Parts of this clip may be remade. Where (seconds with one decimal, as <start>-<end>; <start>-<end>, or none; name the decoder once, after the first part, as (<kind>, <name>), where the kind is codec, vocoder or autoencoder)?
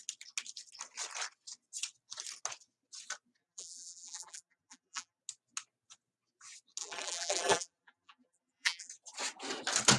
3.4-5.2 (vocoder, BigVGAN v2); 6.8-8.9